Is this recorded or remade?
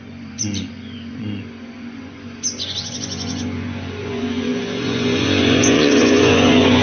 remade